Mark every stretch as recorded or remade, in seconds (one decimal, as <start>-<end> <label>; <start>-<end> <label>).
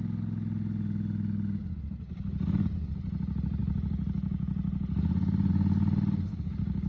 0.0-6.3 recorded; 6.3-6.9 remade